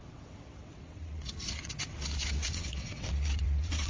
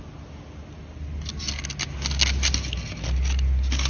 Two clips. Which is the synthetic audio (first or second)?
first